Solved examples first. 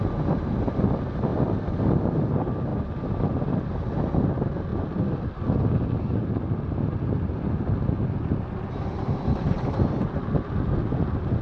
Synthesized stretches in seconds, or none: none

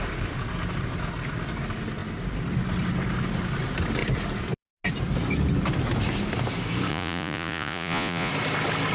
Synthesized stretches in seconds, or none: 6.9-8.3 (vocoder, Vocos)

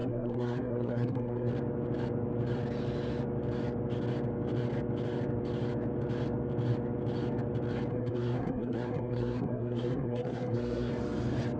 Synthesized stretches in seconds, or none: 0.0-1.5 (codec, SNAC); 7.9-10.9